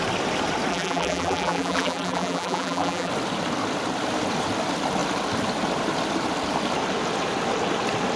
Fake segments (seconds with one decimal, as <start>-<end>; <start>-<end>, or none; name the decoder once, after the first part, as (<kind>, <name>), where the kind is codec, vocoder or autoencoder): 0.7-3.1 (vocoder, BigVGAN v2)